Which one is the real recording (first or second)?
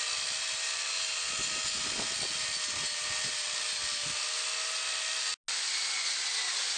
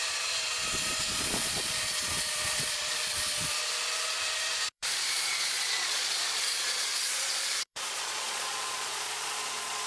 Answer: first